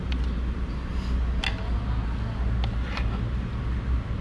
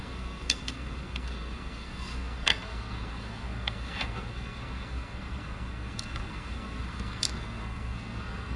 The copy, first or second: second